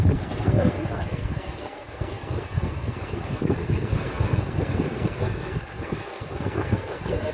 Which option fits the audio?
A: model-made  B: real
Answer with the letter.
A